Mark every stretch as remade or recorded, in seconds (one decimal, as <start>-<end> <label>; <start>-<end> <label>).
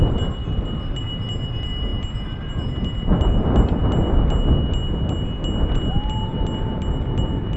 0.0-7.6 recorded